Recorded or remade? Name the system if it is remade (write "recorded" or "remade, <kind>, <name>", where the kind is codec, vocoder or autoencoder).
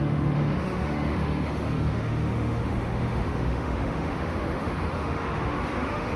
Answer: remade, autoencoder, DAC-VAE